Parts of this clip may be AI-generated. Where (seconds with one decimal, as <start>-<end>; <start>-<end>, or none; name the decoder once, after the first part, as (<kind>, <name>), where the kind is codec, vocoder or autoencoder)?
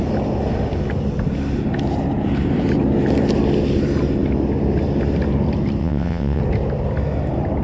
5.8-6.4 (vocoder, WaveNeXt)